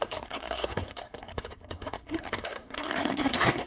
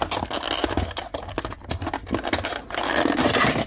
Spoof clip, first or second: first